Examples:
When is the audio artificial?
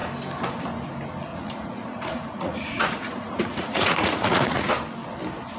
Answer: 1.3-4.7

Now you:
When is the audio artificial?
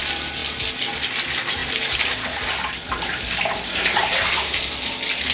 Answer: none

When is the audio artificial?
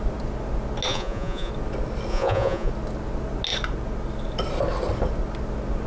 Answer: 0.9-1.5; 2.1-2.7